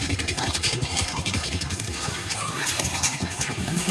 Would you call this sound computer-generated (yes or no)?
yes